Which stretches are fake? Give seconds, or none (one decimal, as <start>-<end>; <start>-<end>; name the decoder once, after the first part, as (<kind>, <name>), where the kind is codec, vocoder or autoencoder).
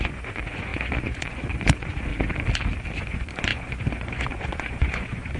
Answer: 0.0-2.1 (vocoder, Vocos); 3.0-5.4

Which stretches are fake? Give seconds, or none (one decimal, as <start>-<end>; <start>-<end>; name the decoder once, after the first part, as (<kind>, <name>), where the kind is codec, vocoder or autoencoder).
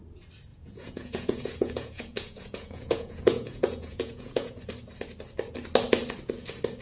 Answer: 0.5-4.6 (vocoder, Vocos)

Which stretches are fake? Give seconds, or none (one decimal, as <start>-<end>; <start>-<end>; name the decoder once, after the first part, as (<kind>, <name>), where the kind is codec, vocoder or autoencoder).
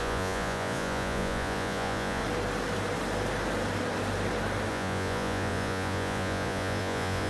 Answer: 0.0-2.2 (vocoder, Vocos); 4.7-7.3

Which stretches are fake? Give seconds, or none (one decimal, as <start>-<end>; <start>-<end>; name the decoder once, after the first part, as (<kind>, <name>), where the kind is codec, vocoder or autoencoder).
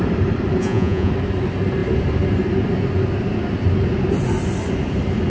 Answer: 0.6-1.1 (vocoder, Vocos)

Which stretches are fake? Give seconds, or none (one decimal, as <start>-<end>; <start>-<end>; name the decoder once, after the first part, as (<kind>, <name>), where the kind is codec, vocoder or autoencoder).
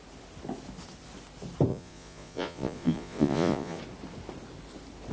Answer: 1.7-3.8 (vocoder, Vocos)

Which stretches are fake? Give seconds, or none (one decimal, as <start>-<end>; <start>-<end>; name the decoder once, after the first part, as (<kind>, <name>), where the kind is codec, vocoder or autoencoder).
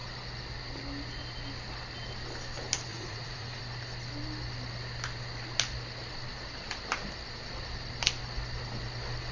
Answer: 2.9-3.6 (vocoder, Vocos)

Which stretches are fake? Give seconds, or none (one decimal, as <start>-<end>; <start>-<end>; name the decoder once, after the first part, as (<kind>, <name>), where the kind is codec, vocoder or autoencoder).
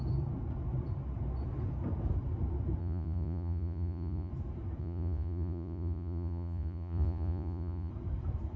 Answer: 2.8-4.3 (vocoder, Vocos); 4.8-7.9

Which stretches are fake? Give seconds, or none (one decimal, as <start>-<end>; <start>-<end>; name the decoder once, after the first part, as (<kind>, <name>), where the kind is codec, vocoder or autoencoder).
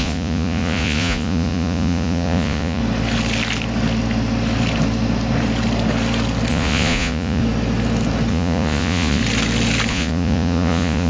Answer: 0.0-2.8 (vocoder, Vocos); 6.5-7.4; 8.3-9.2; 9.9-11.1